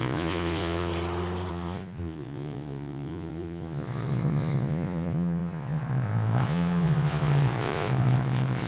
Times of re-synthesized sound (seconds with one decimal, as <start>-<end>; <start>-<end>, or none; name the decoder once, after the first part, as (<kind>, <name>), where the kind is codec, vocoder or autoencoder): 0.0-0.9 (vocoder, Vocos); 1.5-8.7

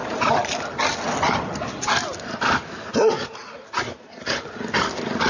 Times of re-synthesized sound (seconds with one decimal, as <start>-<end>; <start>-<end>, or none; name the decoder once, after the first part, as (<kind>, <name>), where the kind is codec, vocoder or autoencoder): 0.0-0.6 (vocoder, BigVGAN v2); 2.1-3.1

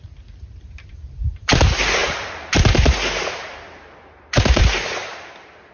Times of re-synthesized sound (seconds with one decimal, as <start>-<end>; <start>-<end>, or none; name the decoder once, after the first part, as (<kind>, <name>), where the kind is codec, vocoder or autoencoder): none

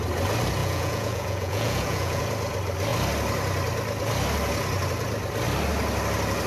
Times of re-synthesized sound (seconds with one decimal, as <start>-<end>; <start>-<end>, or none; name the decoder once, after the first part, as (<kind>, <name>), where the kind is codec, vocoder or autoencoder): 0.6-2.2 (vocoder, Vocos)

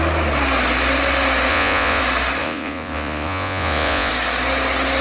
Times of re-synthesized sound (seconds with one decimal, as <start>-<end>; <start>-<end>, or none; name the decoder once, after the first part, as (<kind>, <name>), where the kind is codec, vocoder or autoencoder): 1.5-2.0 (vocoder, Vocos); 2.4-4.1

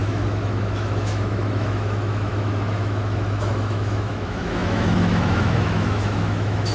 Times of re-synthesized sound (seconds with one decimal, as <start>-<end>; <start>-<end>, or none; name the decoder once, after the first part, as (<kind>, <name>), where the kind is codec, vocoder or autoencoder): 0.0-6.7 (autoencoder, DAC-VAE)

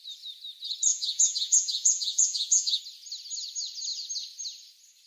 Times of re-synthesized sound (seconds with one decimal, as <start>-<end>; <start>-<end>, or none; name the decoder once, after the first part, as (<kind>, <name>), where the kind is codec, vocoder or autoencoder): 0.9-2.8 (vocoder, Vocos)